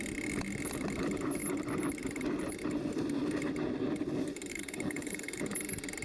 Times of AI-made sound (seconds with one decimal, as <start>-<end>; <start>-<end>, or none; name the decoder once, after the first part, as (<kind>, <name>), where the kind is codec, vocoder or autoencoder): 4.5-5.4 (codec, HILCodec)

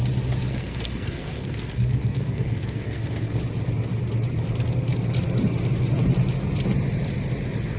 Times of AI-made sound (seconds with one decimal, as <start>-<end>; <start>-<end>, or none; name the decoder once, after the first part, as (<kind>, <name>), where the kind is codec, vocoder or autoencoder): 0.5-3.4 (codec, SNAC)

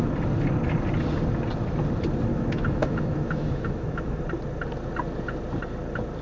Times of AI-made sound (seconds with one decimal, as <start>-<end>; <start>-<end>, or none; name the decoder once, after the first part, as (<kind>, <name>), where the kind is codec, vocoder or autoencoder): 2.3-4.2 (autoencoder, DAC-VAE)